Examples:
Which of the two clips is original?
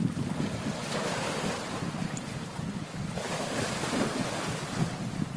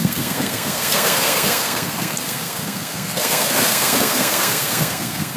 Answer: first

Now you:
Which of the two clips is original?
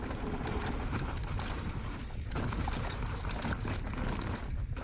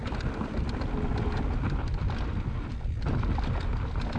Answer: second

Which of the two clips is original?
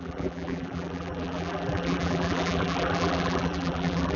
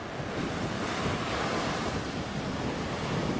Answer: second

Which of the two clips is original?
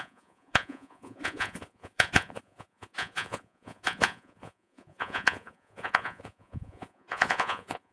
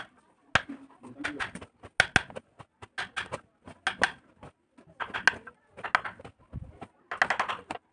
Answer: second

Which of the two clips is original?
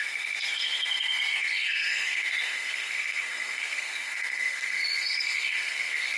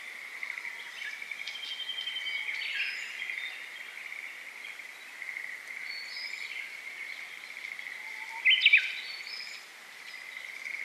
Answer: second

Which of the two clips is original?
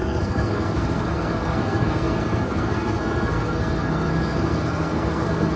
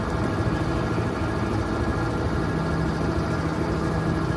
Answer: second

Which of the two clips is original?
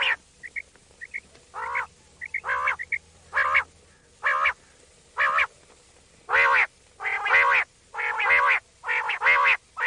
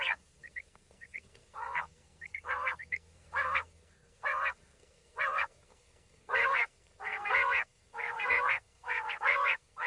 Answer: first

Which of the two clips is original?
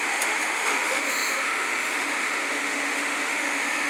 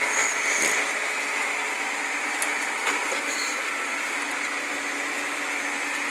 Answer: second